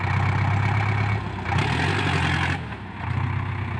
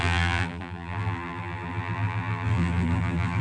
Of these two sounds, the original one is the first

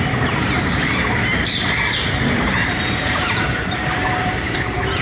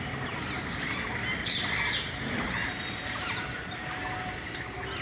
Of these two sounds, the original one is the second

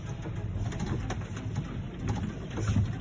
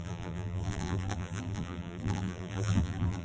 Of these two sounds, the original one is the first